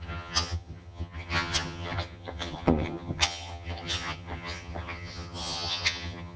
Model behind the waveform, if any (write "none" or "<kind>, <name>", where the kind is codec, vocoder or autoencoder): vocoder, HiFi-GAN